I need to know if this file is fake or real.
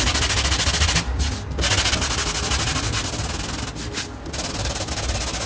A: real